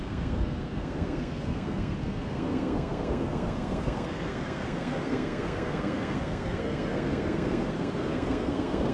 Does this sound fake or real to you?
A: fake